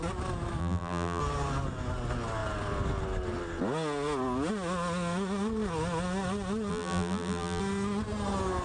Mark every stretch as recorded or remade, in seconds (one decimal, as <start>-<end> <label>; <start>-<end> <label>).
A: 0.0-0.6 recorded; 0.6-1.2 remade; 1.2-6.7 recorded; 6.7-7.6 remade; 7.6-8.6 recorded